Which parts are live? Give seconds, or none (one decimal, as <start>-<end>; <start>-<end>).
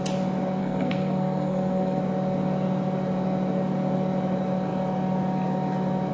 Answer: 0.0-0.6; 2.0-6.1